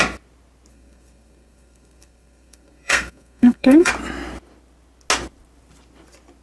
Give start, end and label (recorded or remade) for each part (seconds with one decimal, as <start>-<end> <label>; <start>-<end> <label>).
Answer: 0.0-0.7 recorded; 0.7-3.9 remade; 3.9-6.4 recorded